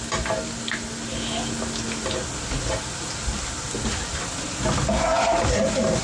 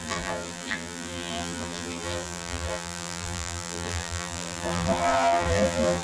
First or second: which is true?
first